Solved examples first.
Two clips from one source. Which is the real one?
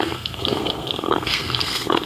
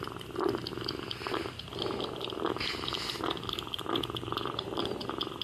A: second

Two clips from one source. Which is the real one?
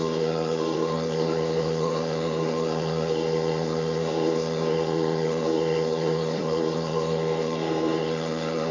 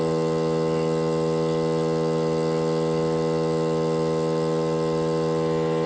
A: second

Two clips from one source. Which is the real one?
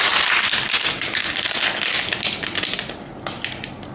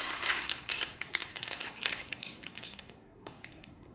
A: first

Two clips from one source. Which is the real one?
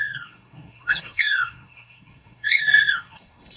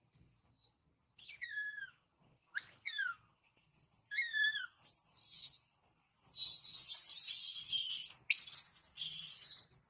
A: second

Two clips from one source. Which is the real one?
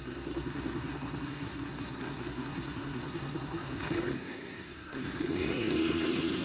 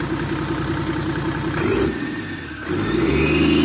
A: second